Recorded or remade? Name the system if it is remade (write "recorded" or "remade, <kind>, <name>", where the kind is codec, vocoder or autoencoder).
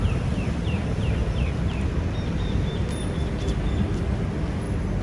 recorded